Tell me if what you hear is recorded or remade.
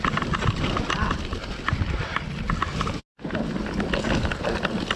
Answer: recorded